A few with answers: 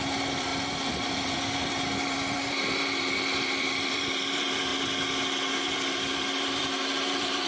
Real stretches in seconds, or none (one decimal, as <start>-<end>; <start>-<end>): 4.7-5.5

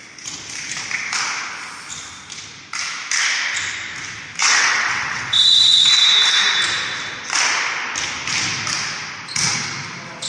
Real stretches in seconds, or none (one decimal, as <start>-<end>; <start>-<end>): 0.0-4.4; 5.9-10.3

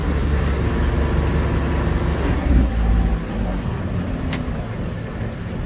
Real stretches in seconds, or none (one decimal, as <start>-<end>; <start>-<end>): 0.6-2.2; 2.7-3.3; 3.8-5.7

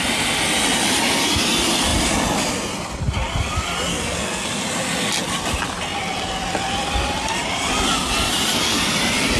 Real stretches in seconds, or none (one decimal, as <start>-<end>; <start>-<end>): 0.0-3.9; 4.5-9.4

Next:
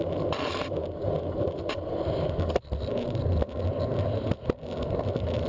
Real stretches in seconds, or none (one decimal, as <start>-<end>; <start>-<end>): 0.0-5.5

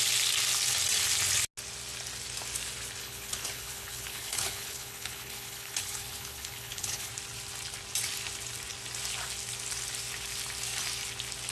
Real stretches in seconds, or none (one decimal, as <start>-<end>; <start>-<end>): 0.0-3.0; 7.1-11.5

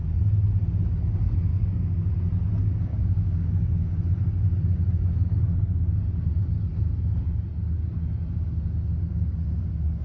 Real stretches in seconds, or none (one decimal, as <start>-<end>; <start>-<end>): 0.0-1.5; 2.1-2.9; 3.5-10.0

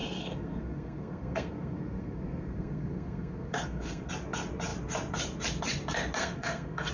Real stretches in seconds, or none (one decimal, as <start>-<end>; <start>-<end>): 4.1-6.2